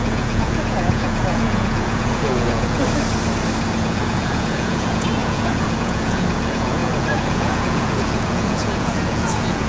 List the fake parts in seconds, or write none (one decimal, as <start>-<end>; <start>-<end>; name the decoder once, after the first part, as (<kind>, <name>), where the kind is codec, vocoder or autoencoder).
0.0-2.8 (vocoder, Vocos); 3.8-9.7